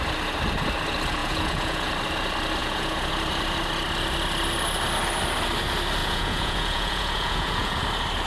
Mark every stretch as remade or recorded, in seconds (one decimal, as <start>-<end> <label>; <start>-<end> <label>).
0.0-1.2 recorded; 1.2-1.9 remade; 1.9-2.6 recorded; 2.6-3.1 remade; 3.1-6.0 recorded; 6.0-7.8 remade; 7.8-8.3 recorded